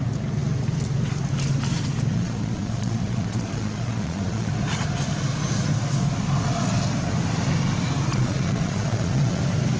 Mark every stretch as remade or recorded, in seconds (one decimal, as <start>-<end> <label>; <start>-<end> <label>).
0.0-2.1 recorded; 2.1-4.5 remade; 4.5-8.1 recorded; 8.1-9.4 remade; 9.4-9.8 recorded